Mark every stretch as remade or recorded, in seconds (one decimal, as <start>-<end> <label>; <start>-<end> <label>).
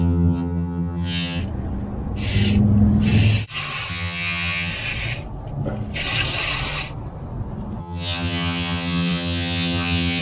0.0-1.4 remade; 1.4-3.9 recorded; 3.9-4.7 remade; 4.7-7.8 recorded; 7.8-10.2 remade